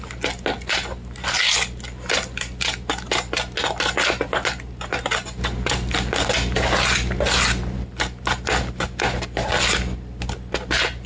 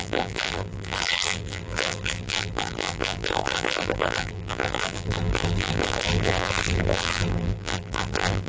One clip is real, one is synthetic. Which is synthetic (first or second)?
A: second